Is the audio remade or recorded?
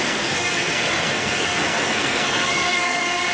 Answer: remade